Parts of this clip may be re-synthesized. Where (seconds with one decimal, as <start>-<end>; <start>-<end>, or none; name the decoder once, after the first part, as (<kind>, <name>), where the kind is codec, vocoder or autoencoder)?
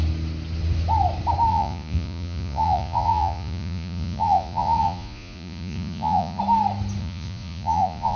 1.5-6.4 (vocoder, Vocos); 7.0-8.2